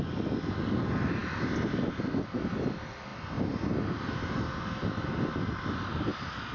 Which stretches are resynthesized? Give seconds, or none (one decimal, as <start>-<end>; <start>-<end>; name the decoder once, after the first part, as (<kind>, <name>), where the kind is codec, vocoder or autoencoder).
none